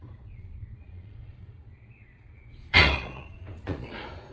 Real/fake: fake